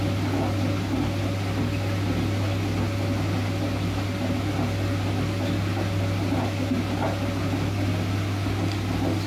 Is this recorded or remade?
recorded